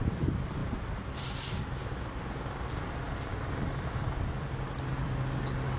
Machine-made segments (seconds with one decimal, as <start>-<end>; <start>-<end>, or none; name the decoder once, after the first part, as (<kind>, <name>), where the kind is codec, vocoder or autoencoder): none